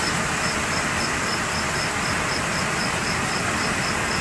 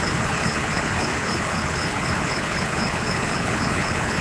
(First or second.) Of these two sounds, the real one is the first